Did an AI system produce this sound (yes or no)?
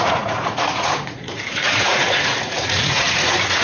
yes